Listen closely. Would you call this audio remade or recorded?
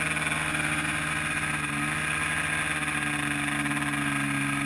recorded